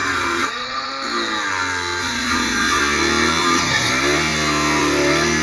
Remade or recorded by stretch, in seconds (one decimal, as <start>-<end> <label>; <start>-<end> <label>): 0.0-0.9 remade; 0.9-2.0 recorded; 2.0-2.8 remade; 2.8-3.4 recorded; 3.4-3.9 remade; 3.9-5.4 recorded